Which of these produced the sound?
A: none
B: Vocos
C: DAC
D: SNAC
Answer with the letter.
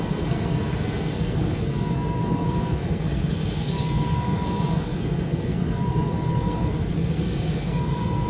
D